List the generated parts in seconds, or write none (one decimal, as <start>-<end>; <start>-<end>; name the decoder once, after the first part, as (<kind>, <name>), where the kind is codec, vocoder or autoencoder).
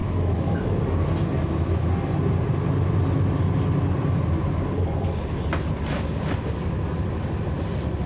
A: 0.0-0.8 (autoencoder, DAC-VAE)